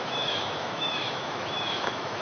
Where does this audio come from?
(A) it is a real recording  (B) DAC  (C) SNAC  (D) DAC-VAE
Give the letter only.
D